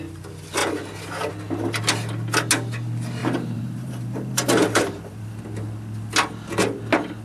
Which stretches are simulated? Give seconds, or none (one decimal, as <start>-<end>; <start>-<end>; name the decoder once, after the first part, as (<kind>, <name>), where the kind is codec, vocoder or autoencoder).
3.2-5.4 (vocoder, BigVGAN v2)